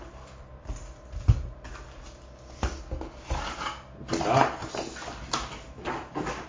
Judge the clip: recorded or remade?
recorded